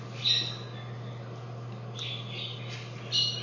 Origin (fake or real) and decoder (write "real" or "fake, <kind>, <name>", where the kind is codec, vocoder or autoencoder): real